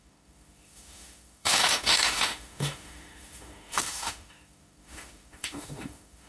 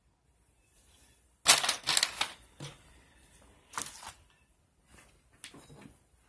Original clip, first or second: second